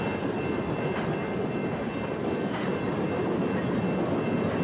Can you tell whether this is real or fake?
real